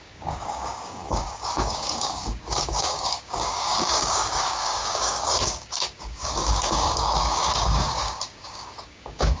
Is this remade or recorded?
remade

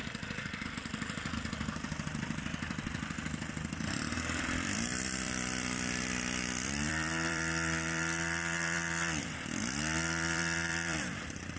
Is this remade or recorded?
remade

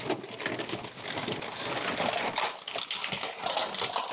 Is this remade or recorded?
recorded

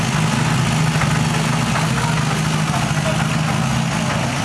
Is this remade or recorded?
recorded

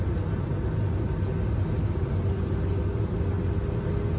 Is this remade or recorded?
recorded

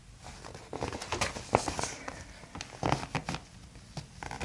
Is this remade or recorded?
recorded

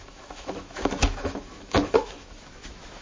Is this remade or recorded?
remade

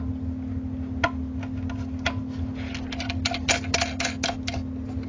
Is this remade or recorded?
recorded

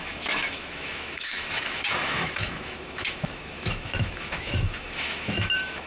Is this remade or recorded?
remade